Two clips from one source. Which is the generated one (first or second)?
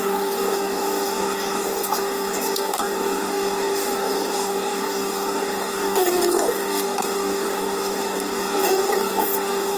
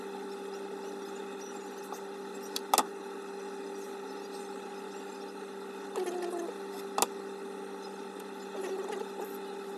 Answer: first